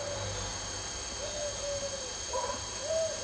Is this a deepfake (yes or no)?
yes